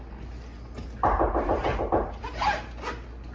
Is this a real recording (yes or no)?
yes